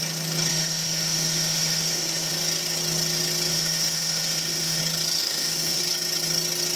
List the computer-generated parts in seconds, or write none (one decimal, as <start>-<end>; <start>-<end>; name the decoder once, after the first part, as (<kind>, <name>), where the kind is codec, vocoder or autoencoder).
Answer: 0.5-2.3 (autoencoder, DAC-VAE); 3.5-4.8; 5.2-5.8